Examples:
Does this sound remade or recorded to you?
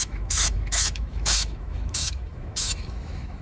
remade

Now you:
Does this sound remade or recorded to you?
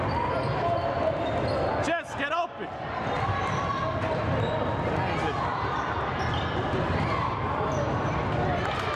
recorded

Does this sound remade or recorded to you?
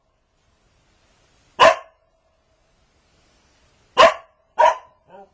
recorded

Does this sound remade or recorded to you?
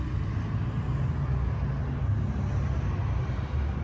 recorded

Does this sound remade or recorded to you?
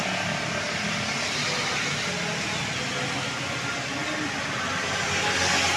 recorded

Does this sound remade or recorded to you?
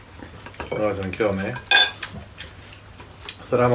recorded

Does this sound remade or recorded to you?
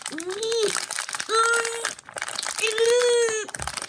recorded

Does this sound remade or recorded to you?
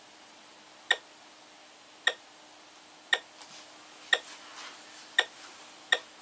recorded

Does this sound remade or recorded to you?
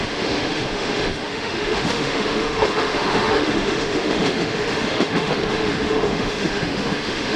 remade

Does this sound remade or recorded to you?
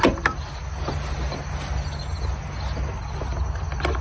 recorded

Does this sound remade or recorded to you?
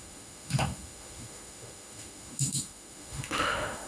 remade